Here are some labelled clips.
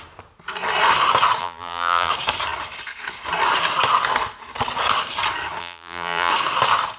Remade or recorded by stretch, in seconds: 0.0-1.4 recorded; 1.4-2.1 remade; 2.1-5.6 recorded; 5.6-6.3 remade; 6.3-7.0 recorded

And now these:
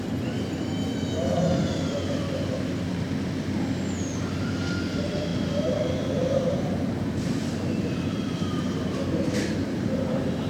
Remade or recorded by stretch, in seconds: 0.0-5.3 recorded; 5.3-10.5 remade